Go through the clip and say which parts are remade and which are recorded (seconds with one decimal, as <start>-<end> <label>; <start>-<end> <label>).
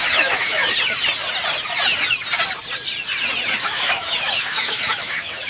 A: 0.0-0.6 remade; 0.6-3.6 recorded; 3.6-5.5 remade